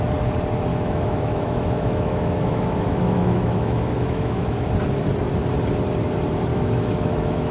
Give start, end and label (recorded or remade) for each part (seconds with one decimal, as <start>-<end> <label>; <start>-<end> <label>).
0.0-0.7 recorded; 0.7-4.7 remade; 4.7-6.5 recorded; 6.5-7.5 remade